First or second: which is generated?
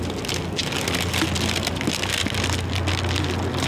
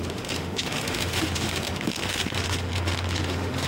second